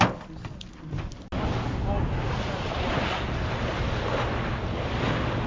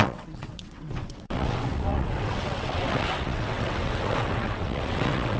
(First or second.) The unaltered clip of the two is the first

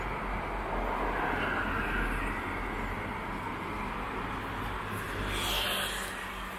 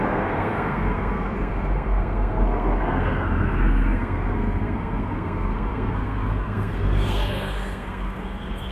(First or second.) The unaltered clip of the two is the first